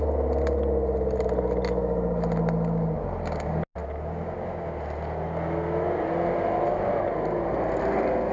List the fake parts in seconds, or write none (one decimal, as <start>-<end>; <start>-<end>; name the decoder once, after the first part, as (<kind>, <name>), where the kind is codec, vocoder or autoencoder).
none